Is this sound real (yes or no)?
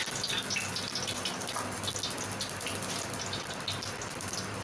yes